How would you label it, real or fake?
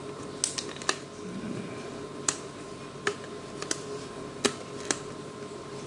real